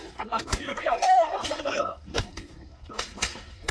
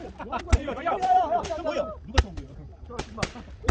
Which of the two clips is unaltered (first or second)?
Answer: second